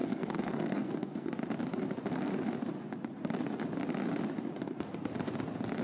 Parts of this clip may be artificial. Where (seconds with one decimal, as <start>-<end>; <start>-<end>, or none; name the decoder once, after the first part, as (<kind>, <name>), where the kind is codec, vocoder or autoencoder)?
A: 0.0-1.3 (codec, SNAC)